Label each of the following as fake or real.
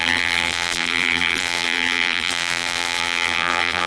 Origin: fake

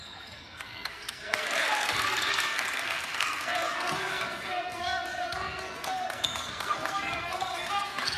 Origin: fake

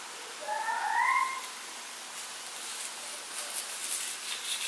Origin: real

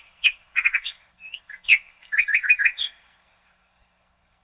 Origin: fake